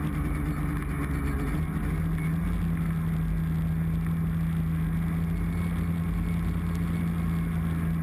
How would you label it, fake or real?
real